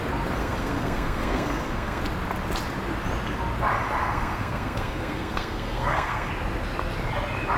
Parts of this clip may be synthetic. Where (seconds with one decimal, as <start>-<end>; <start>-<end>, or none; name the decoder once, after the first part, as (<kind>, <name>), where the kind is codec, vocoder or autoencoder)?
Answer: 0.4-2.0 (codec, SNAC); 4.0-6.3